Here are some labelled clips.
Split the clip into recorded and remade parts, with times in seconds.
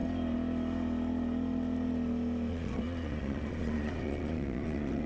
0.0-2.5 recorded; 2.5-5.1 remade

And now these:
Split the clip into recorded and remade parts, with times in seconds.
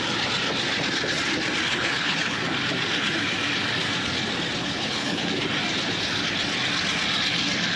0.0-1.7 recorded; 1.7-2.4 remade; 2.4-4.6 recorded; 4.6-5.3 remade; 5.3-7.8 recorded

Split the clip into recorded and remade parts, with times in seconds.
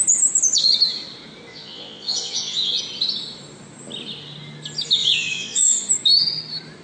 0.0-1.5 recorded; 1.5-2.8 remade; 2.8-5.0 recorded; 5.0-5.9 remade; 5.9-6.8 recorded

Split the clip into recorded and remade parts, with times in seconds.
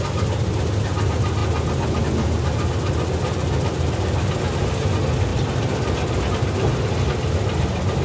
0.0-8.0 recorded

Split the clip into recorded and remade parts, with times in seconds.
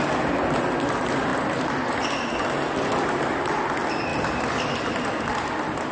0.0-5.9 recorded